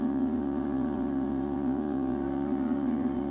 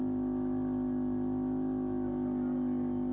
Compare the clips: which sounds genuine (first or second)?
second